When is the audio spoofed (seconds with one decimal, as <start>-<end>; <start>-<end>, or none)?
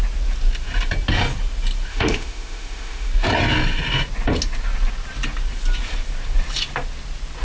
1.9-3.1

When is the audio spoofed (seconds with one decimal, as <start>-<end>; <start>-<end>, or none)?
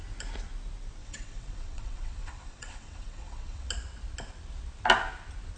1.0-3.7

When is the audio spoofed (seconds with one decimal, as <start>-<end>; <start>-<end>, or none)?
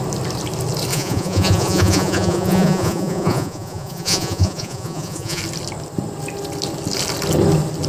0.9-5.4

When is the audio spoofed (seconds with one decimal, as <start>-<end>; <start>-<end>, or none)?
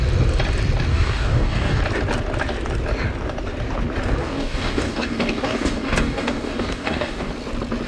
0.9-1.8; 4.2-7.3